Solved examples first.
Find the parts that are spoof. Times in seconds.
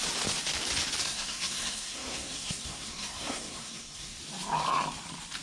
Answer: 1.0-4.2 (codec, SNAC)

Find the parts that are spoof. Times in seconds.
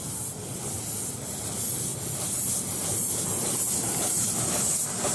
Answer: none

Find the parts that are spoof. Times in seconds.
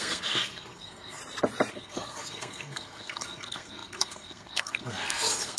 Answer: 0.0-1.2 (codec, SNAC); 1.7-5.6